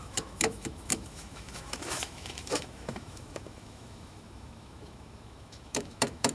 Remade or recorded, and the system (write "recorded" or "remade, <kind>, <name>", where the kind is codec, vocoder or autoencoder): remade, autoencoder, DAC-VAE